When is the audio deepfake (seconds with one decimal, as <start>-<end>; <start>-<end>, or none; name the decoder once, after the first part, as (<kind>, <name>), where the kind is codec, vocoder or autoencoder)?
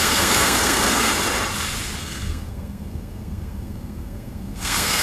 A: 0.0-1.1 (codec, SNAC); 2.0-5.0